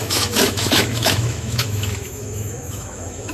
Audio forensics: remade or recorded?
remade